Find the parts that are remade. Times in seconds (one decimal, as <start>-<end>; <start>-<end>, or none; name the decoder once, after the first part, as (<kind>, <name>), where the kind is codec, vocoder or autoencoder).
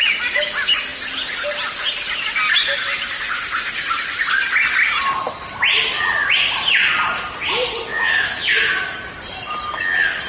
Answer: 7.9-8.8 (autoencoder, DAC-VAE)